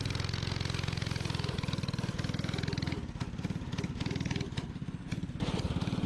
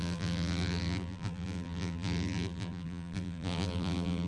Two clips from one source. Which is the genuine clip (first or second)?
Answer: first